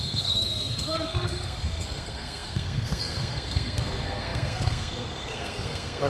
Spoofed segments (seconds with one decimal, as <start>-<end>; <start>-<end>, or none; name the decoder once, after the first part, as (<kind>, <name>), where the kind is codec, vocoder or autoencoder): 0.0-6.1 (codec, SNAC)